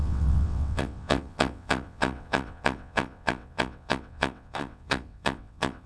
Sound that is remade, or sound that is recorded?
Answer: remade